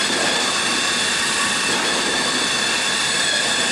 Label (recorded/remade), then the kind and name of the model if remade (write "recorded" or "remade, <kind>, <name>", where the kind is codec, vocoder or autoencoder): recorded